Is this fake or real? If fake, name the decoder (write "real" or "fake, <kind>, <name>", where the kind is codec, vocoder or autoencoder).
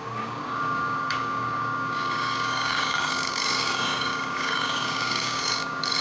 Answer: fake, codec, DAC